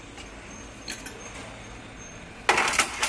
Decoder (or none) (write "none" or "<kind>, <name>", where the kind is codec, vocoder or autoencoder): none